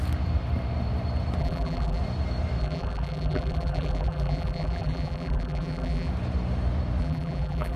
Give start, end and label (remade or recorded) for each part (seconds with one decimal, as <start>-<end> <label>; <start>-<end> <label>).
0.0-1.4 recorded; 1.4-2.0 remade; 2.0-2.6 recorded; 2.6-6.1 remade; 6.1-7.0 recorded; 7.0-7.8 remade